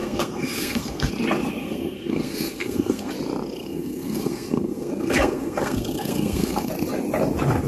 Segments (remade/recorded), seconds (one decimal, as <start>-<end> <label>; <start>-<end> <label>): 0.0-1.1 remade; 1.1-1.6 recorded; 1.6-3.1 remade; 3.1-3.6 recorded; 3.6-6.7 remade; 6.7-7.7 recorded